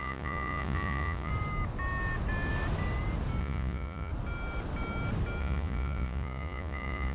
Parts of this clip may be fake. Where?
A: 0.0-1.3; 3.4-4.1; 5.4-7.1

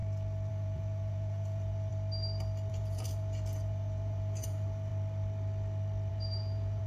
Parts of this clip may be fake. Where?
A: 0.5-1.9; 2.7-4.9; 6.1-6.9

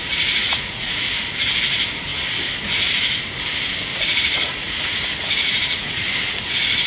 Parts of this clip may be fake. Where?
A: 0.0-1.0; 3.9-6.1

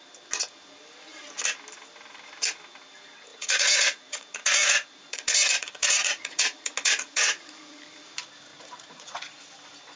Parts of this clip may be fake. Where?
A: 3.3-7.8; 8.5-9.4

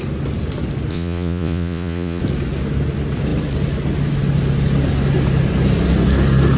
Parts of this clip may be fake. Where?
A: 0.9-2.2

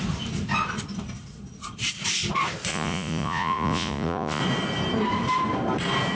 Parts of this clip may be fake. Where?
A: 2.7-4.4